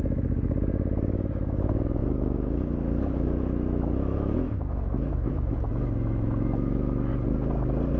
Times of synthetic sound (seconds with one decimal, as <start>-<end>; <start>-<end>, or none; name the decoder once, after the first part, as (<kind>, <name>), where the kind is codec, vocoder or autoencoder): 0.0-7.1 (autoencoder, DAC-VAE)